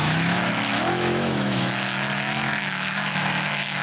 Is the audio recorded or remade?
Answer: remade